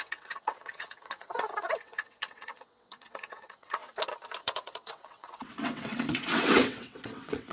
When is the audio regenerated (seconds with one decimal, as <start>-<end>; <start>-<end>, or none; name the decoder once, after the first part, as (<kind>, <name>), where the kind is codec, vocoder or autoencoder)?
0.0-3.8 (vocoder, WaveNeXt); 4.4-7.5